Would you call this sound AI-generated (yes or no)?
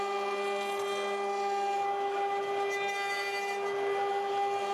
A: no